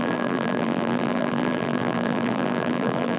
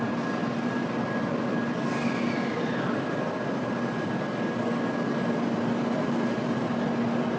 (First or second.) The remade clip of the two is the first